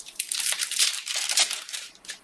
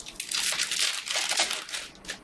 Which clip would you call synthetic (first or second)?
first